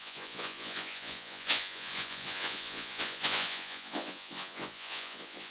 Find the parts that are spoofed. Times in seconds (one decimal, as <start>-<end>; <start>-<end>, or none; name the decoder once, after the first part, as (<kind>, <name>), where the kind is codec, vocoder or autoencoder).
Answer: 0.0-5.5 (vocoder, Vocos)